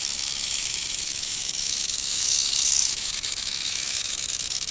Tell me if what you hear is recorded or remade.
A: remade